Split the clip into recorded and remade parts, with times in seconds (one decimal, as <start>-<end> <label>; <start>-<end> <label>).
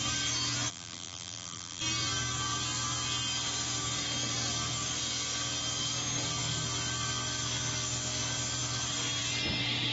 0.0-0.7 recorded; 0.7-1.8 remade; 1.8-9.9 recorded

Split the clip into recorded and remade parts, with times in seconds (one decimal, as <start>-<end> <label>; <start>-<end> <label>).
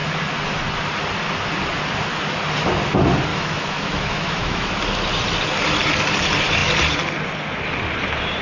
0.0-3.3 recorded; 3.3-4.7 remade; 4.7-8.4 recorded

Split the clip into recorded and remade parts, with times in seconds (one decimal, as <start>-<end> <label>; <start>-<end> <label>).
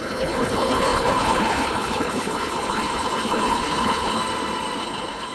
0.0-4.2 remade; 4.2-4.8 recorded; 4.8-5.3 remade